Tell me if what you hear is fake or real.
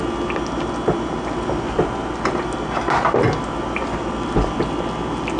real